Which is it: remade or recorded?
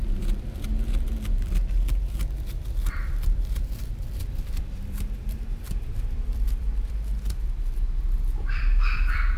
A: remade